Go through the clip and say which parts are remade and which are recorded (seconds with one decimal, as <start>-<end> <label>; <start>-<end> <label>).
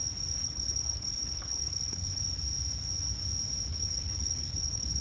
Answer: 0.0-0.4 recorded; 0.4-2.2 remade; 2.2-3.7 recorded; 3.7-5.0 remade